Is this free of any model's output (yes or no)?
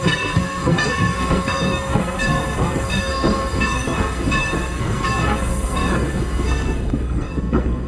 no